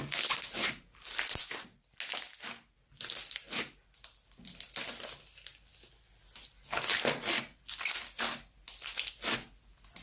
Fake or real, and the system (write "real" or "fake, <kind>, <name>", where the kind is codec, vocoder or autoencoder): real